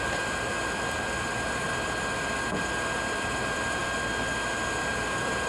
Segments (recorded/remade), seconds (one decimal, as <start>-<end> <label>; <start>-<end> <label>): 0.0-3.8 remade; 3.8-4.9 recorded; 4.9-5.5 remade